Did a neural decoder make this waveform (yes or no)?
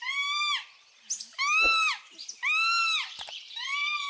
no